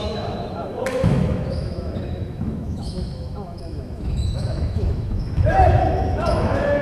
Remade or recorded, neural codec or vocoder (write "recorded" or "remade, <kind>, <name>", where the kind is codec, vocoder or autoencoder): remade, autoencoder, DAC-VAE